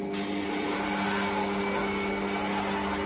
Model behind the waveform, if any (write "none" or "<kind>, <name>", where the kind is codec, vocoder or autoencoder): none